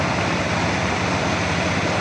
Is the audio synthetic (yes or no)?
no